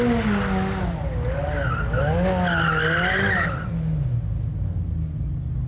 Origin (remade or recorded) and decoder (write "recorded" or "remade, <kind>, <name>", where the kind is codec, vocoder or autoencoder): recorded